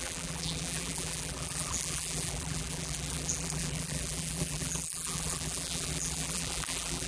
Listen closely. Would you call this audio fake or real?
fake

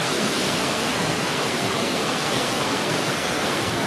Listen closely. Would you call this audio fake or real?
fake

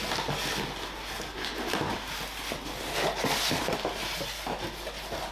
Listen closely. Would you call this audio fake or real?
real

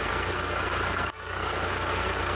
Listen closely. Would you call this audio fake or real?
fake